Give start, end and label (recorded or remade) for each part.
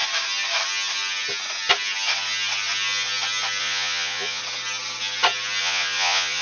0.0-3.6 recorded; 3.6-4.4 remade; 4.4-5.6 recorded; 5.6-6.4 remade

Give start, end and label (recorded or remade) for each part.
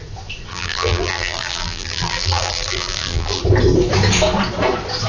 0.0-0.5 recorded; 0.5-3.4 remade; 3.4-5.1 recorded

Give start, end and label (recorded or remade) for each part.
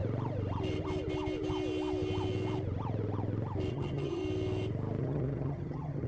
0.0-3.7 recorded; 3.7-4.2 remade; 4.2-5.0 recorded; 5.0-6.1 remade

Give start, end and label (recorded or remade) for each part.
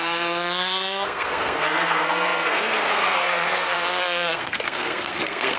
0.0-5.6 remade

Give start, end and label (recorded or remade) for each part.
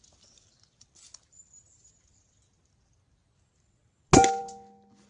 0.0-5.1 recorded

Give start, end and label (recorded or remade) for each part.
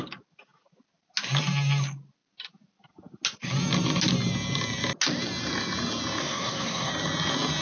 0.0-6.2 recorded; 6.2-6.9 remade; 6.9-7.6 recorded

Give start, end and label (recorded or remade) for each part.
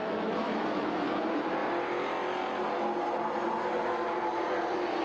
0.0-1.2 remade; 1.2-5.0 recorded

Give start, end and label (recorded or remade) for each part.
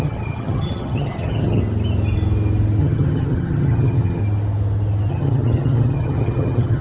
0.0-1.6 remade; 1.6-2.8 recorded; 2.8-4.2 remade; 4.2-5.1 recorded; 5.1-6.8 remade